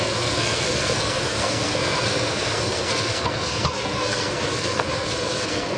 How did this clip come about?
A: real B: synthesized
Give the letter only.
B